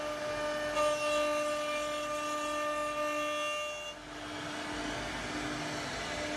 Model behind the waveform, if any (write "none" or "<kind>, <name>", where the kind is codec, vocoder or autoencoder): none